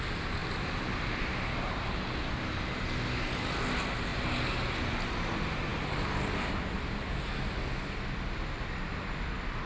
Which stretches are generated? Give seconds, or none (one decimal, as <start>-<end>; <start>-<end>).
0.4-1.9